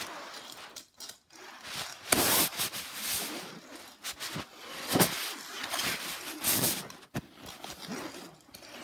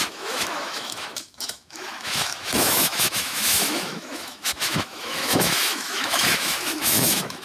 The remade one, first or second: second